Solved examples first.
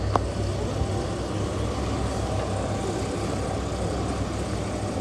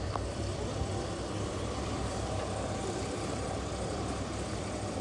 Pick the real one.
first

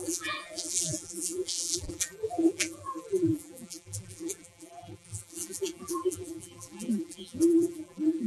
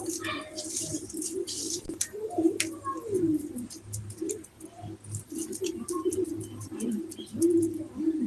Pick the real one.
second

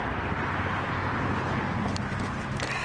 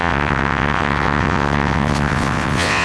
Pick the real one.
first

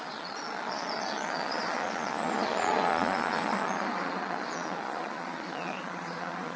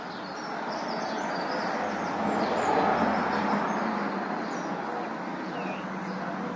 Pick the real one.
second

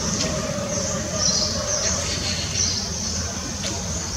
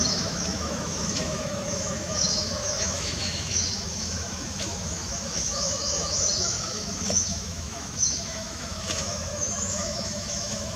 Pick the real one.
first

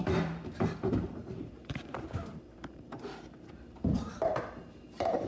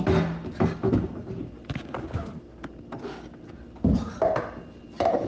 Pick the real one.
second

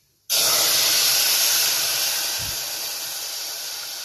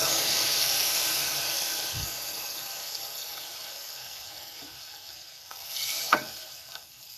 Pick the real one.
first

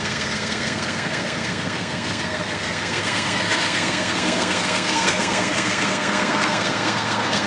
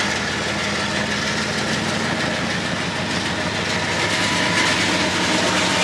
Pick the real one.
second